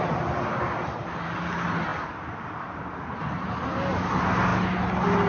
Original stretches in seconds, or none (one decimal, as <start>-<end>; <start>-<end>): 0.0-5.3